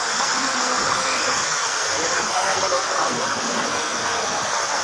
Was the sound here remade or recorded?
remade